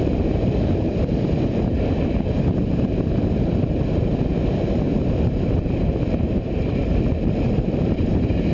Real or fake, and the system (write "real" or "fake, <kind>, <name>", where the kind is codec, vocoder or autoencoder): fake, vocoder, BigVGAN v2